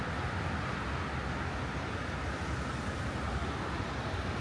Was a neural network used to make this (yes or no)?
no